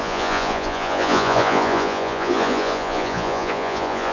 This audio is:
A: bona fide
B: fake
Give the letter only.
B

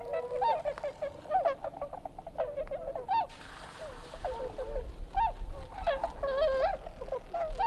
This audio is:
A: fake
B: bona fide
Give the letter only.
B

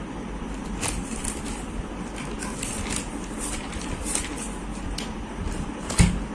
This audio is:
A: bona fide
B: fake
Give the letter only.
A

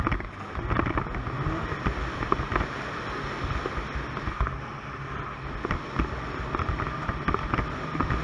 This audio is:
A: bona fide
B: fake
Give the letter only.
A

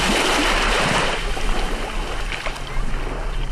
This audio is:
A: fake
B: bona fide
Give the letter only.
B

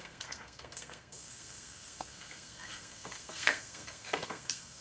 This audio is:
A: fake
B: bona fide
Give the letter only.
A